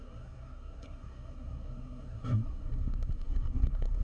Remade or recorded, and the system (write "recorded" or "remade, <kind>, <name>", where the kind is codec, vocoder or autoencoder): remade, codec, SNAC